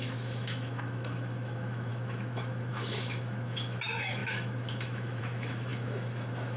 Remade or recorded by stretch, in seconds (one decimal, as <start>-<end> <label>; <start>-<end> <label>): 0.0-6.6 remade